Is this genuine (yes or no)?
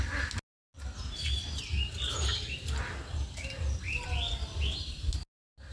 yes